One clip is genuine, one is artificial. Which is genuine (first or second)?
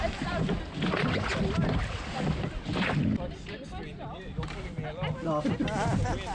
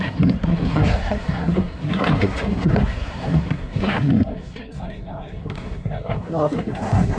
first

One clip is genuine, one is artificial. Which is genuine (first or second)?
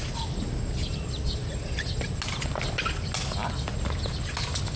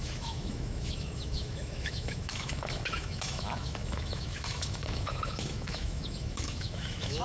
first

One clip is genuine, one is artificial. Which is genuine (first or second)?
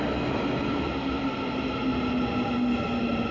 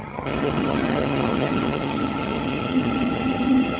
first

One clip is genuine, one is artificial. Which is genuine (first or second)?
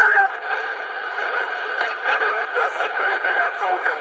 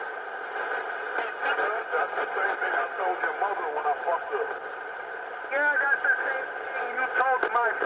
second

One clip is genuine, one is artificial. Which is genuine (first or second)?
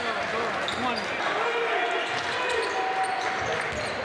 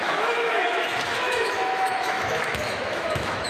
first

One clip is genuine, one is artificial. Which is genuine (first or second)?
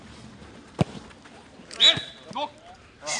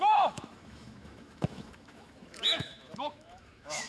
first